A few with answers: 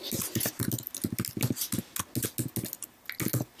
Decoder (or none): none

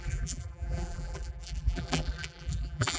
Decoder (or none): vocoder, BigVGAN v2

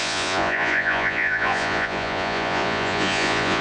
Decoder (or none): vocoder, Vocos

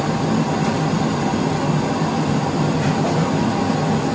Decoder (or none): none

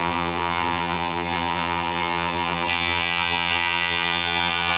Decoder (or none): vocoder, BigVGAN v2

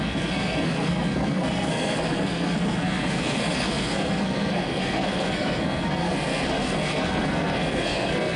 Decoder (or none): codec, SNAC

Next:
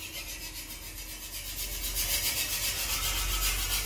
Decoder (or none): none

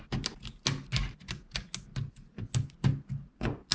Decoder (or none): none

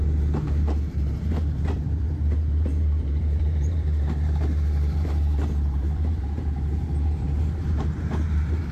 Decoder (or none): vocoder, BigVGAN v2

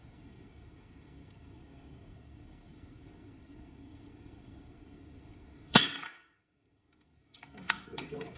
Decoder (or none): codec, SNAC